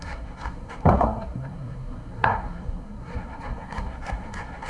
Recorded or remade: remade